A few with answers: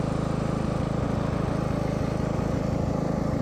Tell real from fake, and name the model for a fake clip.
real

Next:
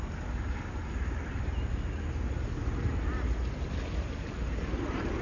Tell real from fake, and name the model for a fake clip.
real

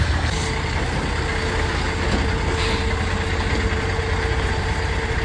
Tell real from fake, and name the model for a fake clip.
real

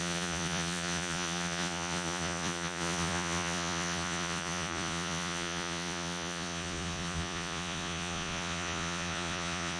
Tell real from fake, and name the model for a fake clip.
fake, vocoder, Vocos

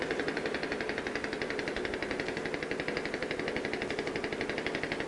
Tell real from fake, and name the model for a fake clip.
real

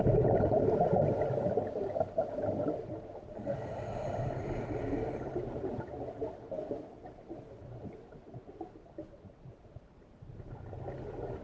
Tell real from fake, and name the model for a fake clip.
real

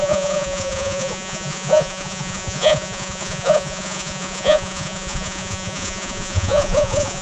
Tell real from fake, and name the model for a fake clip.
fake, vocoder, Vocos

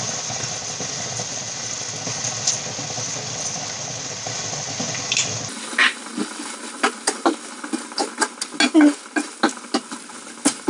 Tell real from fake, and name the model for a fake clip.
real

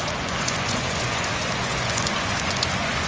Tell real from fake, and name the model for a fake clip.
fake, vocoder, Vocos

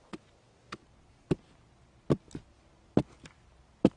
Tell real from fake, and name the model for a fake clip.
real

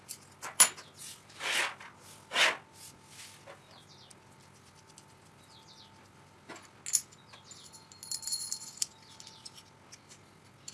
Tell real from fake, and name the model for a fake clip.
real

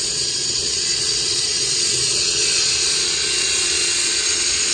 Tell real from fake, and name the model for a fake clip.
fake, vocoder, Vocos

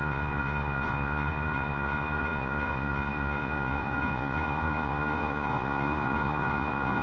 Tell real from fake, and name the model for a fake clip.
fake, vocoder, Vocos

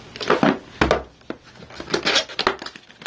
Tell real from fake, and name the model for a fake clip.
real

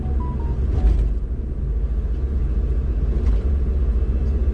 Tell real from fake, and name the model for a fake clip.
real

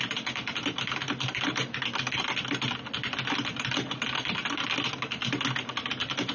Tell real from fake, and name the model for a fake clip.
real